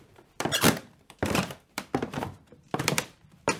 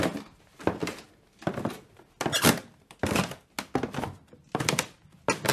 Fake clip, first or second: first